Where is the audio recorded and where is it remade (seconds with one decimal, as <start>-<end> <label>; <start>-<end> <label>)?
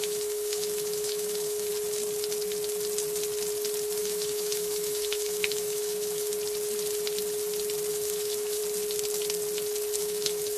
0.0-1.7 remade; 1.7-4.0 recorded; 4.0-6.3 remade; 6.3-7.9 recorded; 7.9-8.6 remade; 8.6-10.0 recorded; 10.0-10.6 remade